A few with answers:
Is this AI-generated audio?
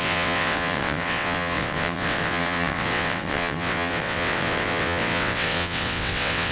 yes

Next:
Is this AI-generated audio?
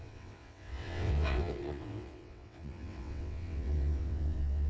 yes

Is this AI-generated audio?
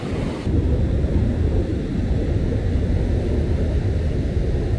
no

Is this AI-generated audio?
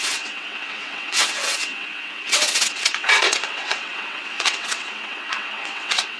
yes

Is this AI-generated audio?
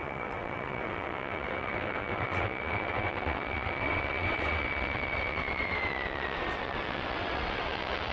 yes